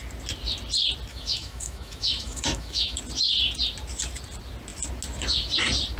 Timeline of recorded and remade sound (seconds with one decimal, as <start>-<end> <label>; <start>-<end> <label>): 0.0-1.1 recorded; 1.1-3.0 remade; 3.0-6.0 recorded